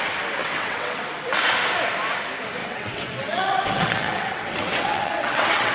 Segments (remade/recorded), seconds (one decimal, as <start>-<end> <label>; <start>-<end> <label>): 0.0-0.4 recorded; 0.4-1.0 remade; 1.0-2.6 recorded; 2.6-5.7 remade